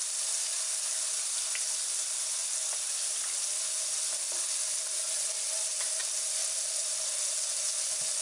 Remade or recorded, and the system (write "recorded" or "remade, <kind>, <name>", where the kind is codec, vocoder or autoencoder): recorded